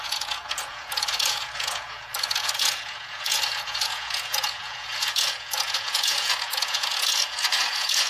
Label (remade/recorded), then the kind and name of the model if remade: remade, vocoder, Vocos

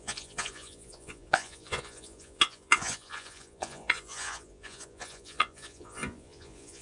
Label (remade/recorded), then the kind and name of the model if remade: remade, vocoder, Vocos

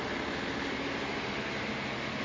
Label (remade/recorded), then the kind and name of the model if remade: recorded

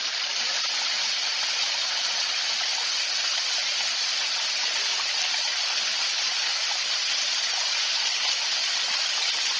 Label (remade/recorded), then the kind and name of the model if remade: recorded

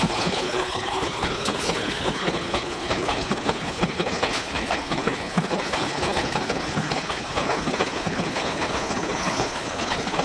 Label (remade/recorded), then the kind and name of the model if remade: remade, codec, HILCodec